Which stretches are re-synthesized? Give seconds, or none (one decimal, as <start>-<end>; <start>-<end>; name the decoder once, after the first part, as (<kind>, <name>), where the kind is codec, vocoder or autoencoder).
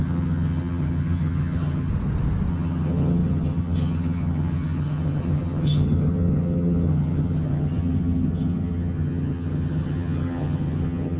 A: 0.0-1.9 (vocoder, HiFi-GAN); 2.5-11.2